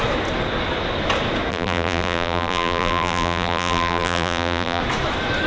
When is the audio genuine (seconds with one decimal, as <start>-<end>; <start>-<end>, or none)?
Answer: 0.0-1.5; 4.8-5.5